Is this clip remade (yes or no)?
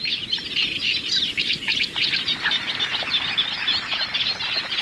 no